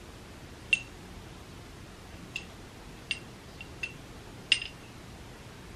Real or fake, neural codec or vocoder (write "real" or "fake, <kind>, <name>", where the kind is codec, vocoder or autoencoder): real